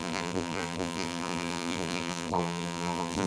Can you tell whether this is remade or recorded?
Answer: remade